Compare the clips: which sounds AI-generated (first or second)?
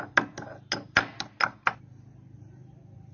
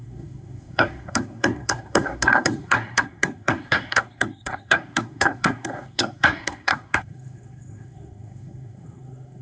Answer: second